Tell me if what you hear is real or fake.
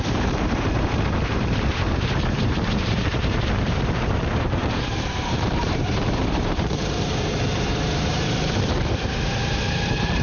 fake